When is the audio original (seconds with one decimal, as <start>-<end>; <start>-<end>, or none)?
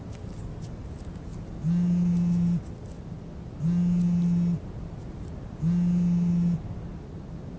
0.0-7.6